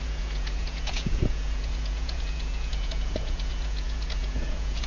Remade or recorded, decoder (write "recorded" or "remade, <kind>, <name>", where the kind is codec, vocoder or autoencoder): remade, vocoder, Vocos